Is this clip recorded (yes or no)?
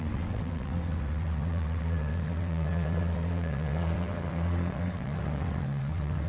no